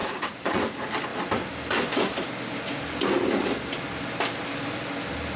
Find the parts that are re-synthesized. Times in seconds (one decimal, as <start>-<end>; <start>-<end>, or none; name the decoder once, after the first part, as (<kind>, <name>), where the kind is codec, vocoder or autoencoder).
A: 0.0-0.7 (vocoder, Vocos)